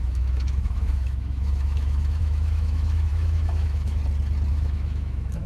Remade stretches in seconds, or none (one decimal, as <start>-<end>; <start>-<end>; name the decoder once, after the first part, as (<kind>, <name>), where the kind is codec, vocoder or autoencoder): 0.0-4.0 (autoencoder, DAC-VAE); 4.5-5.5